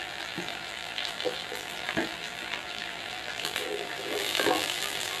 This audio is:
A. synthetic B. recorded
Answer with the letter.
A